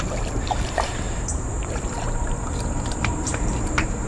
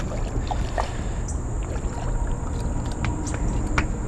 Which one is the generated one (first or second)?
first